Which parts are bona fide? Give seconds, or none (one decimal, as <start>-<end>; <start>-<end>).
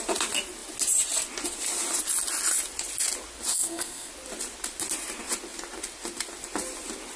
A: 0.0-3.5; 4.1-7.2